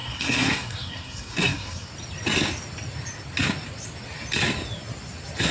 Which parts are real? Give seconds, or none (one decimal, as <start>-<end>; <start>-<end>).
1.9-5.5